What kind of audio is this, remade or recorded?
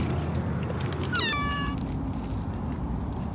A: recorded